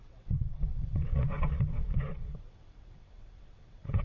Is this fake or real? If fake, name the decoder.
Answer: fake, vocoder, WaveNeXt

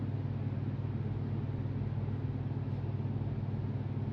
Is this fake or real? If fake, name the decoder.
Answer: real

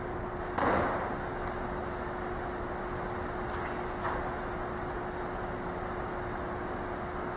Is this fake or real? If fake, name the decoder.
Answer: real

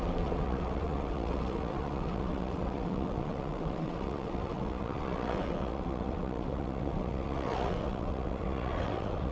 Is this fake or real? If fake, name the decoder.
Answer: fake, vocoder, WaveNeXt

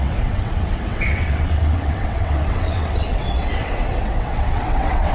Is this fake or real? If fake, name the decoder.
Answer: fake, vocoder, WaveNeXt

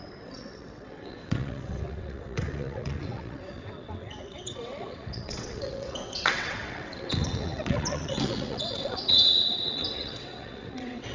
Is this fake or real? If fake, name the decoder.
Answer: fake, vocoder, WaveNeXt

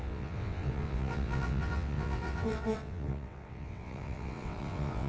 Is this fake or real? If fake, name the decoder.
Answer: fake, vocoder, WaveNeXt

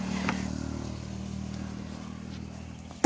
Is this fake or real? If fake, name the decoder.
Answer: real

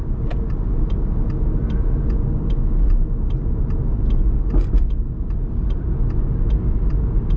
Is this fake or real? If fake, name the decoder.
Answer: real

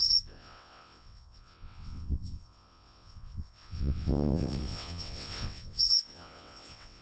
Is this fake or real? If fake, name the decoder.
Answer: fake, vocoder, WaveNeXt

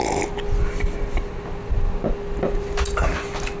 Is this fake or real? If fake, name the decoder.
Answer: real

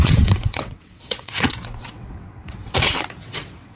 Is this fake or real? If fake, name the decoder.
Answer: fake, vocoder, WaveNeXt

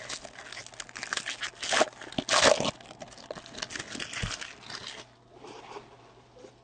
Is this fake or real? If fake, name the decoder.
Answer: real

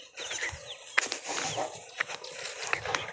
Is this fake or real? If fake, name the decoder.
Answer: real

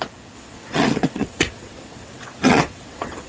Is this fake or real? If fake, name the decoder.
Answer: fake, vocoder, WaveNeXt